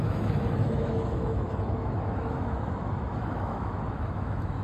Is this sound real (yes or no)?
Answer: no